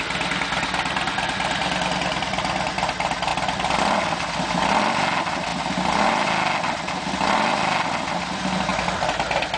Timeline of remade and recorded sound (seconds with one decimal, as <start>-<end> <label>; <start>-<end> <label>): 0.0-9.6 recorded